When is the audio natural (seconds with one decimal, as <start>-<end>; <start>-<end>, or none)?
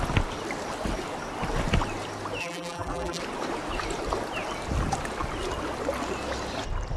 0.0-2.4; 3.2-7.0